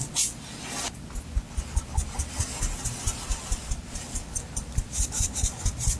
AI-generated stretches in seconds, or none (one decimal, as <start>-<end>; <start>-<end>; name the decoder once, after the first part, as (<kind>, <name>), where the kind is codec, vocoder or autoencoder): 3.3-6.0 (vocoder, BigVGAN v2)